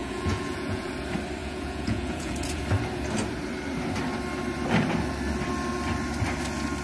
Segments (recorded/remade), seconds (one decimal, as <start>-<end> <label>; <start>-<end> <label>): 0.0-0.9 remade; 0.9-1.4 recorded; 1.4-2.6 remade; 2.6-6.8 recorded